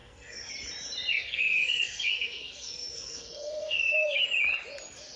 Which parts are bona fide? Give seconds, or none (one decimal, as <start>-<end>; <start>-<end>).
0.5-1.1; 4.2-5.2